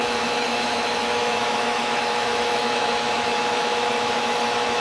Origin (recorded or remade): remade